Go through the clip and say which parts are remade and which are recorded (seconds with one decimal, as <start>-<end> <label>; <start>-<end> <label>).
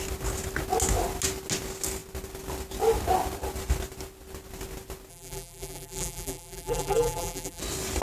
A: 0.0-5.1 recorded; 5.1-7.6 remade; 7.6-8.0 recorded